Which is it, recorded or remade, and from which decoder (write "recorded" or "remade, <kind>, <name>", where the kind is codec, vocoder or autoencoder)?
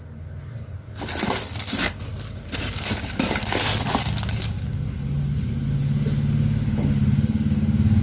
recorded